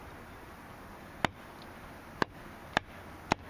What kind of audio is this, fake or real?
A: real